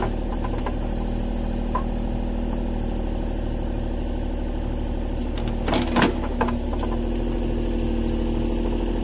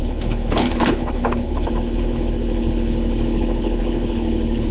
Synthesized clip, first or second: second